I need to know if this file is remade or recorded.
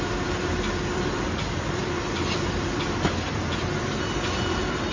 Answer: recorded